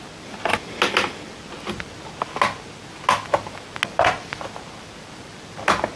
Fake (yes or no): no